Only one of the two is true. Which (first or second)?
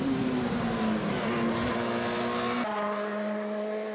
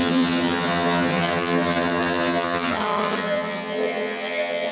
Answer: first